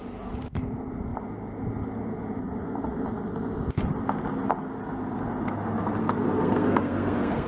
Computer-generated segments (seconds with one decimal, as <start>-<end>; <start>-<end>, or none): 6.0-7.5